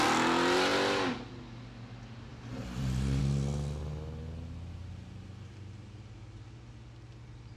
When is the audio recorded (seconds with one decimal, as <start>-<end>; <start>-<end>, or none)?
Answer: 0.0-2.3; 3.2-4.8; 5.8-7.6